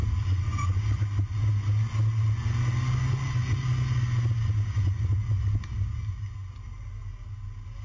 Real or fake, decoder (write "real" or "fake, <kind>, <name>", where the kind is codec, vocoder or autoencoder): real